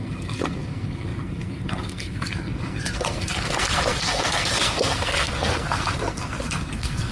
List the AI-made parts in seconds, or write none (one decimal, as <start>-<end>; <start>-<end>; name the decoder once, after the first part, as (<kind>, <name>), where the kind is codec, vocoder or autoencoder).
0.0-7.1 (codec, SNAC)